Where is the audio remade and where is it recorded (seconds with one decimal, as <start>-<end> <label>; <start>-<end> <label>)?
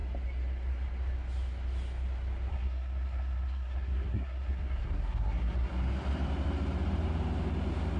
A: 0.0-2.5 recorded; 2.5-5.7 remade; 5.7-8.0 recorded